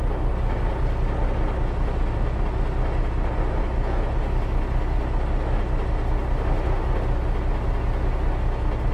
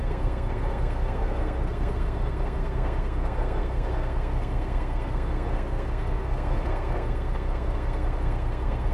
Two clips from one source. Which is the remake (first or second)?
second